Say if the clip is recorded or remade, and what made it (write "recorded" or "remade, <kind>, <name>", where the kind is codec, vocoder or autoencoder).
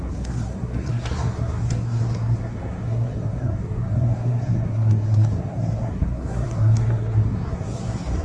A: remade, codec, SNAC